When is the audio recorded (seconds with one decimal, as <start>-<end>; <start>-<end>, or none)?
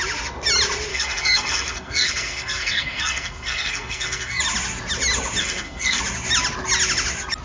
0.0-0.9; 4.4-5.4; 6.0-7.4